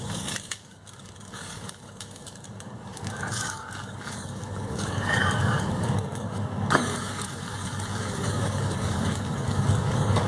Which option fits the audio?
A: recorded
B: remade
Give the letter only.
B